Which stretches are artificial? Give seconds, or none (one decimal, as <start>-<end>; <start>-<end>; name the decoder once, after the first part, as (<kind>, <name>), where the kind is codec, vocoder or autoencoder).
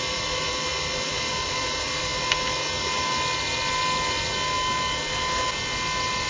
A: 0.0-2.1 (vocoder, BigVGAN v2)